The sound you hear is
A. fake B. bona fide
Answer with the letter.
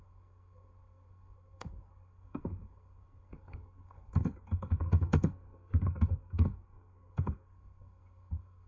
A